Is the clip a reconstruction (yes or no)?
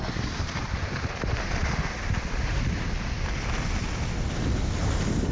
no